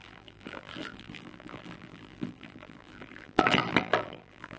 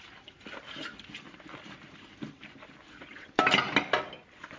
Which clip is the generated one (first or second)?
first